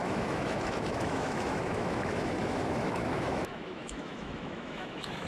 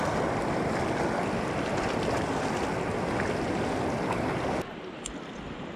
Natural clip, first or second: second